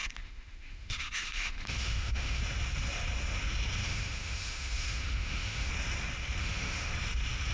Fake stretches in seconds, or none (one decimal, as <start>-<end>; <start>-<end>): 0.0-2.4; 3.8-5.7; 6.4-6.9